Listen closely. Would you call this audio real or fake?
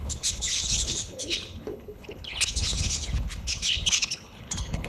fake